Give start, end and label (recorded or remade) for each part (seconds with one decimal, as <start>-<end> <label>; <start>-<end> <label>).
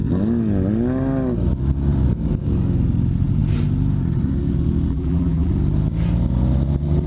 0.0-4.9 recorded; 4.9-5.5 remade; 5.5-7.1 recorded